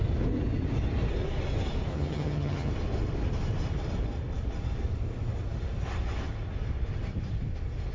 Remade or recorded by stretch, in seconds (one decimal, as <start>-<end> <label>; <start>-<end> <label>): 0.0-1.9 recorded; 1.9-2.7 remade; 2.7-7.9 recorded